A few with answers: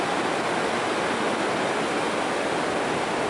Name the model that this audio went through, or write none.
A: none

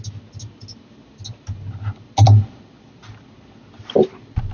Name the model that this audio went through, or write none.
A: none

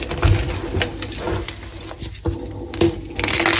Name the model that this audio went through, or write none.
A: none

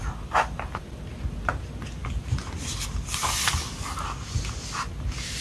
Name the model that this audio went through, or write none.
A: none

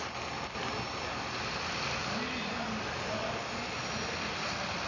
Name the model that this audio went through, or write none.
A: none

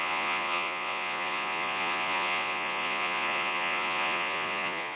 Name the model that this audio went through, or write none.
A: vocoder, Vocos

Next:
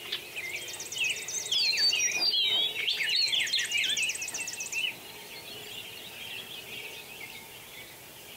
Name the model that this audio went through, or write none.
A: none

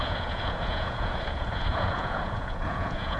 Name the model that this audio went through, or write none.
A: vocoder, Vocos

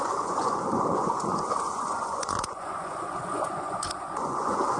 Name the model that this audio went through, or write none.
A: vocoder, Vocos